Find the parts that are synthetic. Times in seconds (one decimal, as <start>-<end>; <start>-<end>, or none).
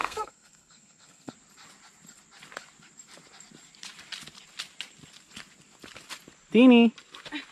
0.0-1.3